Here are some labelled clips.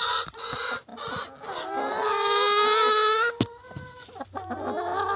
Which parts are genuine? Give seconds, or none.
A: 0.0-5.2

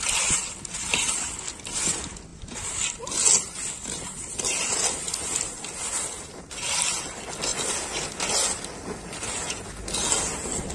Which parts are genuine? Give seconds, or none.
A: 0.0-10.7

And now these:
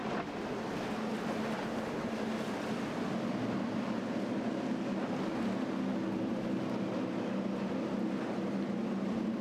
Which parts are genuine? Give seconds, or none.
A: 0.0-9.4